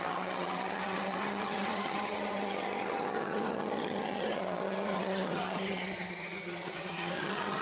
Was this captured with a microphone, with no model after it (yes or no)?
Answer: no